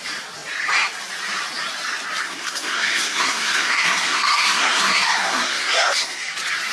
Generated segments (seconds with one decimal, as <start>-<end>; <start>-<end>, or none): 2.2-6.2